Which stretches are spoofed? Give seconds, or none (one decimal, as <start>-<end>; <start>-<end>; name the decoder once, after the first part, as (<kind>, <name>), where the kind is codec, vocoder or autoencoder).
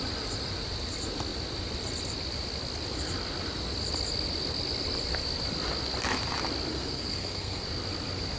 6.7-7.6 (codec, SNAC)